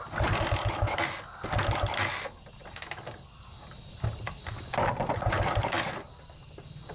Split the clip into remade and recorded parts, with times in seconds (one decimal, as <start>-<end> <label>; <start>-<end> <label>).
0.0-6.9 recorded